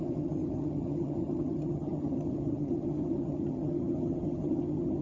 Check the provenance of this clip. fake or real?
fake